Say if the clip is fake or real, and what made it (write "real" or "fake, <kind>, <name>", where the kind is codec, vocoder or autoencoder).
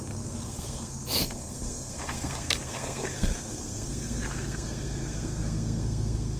fake, codec, SNAC